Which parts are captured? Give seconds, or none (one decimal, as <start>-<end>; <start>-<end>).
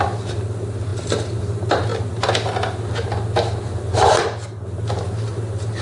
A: 0.0-5.8